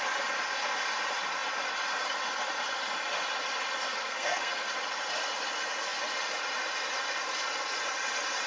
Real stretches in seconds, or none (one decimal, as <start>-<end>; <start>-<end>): 0.0-3.9; 4.7-8.5